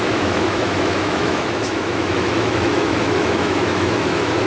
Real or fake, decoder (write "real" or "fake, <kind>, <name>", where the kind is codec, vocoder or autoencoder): fake, autoencoder, DAC-VAE